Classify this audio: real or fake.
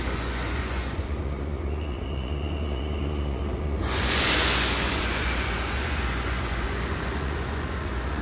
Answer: fake